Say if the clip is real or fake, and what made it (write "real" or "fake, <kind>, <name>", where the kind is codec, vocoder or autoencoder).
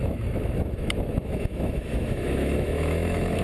fake, autoencoder, DAC-VAE